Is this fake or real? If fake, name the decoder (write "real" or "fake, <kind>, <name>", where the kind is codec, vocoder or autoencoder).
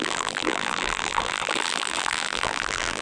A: fake, vocoder, BigVGAN v2